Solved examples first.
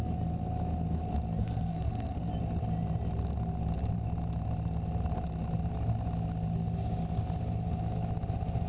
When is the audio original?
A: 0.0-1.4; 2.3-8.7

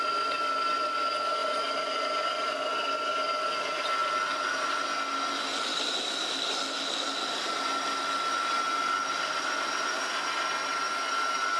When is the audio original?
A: 0.0-11.6

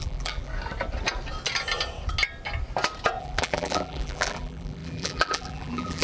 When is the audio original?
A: 0.5-3.2

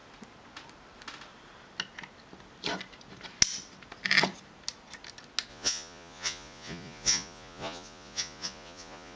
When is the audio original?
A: 0.0-5.5

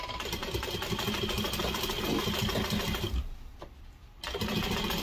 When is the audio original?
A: 0.0-5.0

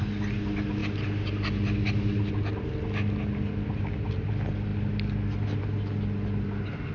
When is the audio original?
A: 0.0-6.9

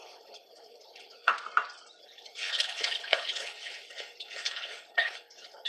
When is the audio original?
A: 1.3-2.0

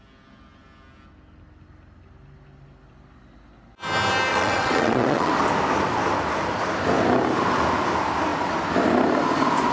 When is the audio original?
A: 0.0-4.3; 5.3-9.7